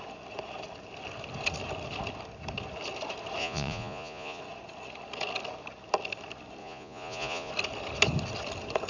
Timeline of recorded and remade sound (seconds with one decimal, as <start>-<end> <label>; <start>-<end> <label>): 0.0-3.4 recorded; 3.4-4.4 remade; 4.4-6.6 recorded; 6.6-7.5 remade; 7.5-8.9 recorded